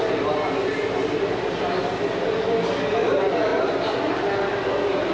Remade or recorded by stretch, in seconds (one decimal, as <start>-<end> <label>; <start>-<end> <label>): 0.0-5.1 recorded